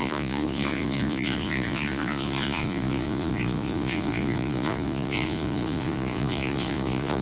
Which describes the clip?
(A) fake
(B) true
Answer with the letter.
A